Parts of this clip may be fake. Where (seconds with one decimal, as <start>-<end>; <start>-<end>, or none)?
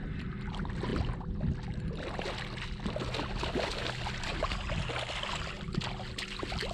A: none